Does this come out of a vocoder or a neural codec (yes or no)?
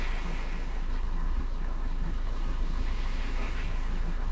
yes